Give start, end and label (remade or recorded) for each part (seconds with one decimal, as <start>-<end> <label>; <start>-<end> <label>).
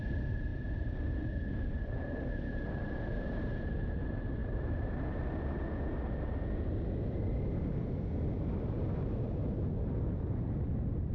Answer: 0.0-11.1 recorded